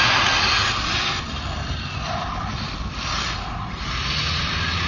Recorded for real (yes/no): yes